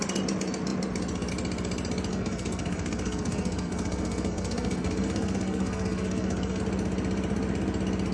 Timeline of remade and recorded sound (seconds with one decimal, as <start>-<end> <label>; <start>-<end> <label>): 0.0-2.1 recorded; 2.1-6.6 remade; 6.6-8.1 recorded